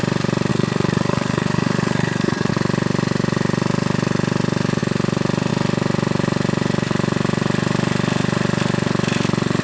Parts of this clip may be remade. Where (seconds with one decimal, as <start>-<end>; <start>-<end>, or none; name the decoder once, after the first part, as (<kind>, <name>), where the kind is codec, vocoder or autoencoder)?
0.5-2.5 (codec, SNAC)